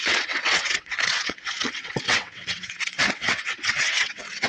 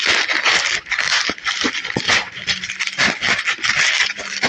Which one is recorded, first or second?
second